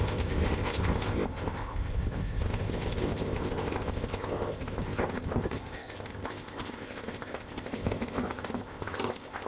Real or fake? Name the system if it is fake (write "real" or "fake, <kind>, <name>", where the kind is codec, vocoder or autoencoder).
fake, codec, ZipCodec